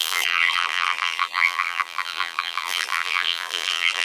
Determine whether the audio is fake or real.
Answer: fake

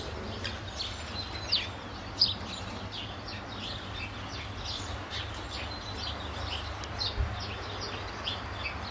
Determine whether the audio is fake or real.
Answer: real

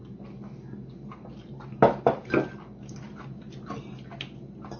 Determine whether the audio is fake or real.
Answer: real